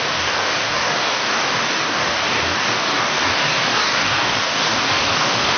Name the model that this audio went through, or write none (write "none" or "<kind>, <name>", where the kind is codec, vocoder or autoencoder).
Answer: codec, DAC